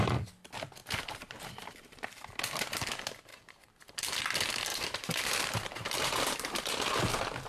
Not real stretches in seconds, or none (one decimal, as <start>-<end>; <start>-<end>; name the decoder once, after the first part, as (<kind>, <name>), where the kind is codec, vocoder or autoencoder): 0.8-2.4 (vocoder, BigVGAN v2); 3.3-4.2; 4.7-7.1